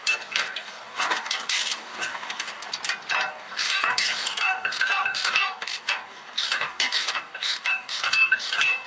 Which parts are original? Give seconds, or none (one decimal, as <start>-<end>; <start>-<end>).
2.7-3.3

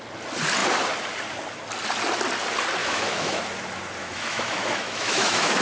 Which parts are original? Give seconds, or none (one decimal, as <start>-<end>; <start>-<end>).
0.0-2.8; 3.4-4.0

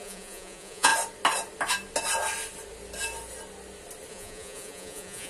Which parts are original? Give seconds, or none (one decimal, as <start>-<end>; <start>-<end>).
0.9-4.1

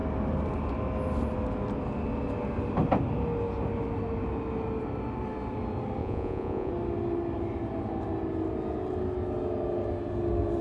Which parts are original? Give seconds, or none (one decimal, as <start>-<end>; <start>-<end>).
0.0-6.0; 6.7-10.6

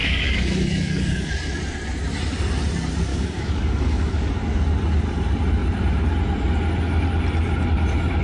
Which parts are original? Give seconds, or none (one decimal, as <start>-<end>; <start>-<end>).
1.3-3.1; 4.3-8.2

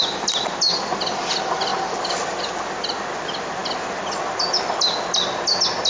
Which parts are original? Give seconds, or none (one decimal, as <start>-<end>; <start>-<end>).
0.0-5.9

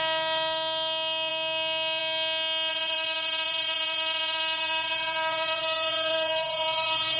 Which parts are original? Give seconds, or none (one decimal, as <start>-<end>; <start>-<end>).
0.0-2.7

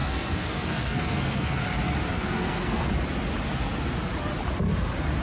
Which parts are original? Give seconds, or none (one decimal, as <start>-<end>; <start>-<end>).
1.6-2.1; 2.9-5.2